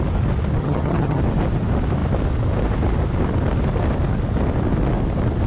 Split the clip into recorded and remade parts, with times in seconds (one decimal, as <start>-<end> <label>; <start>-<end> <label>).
0.0-0.6 recorded; 0.6-1.2 remade; 1.2-5.5 recorded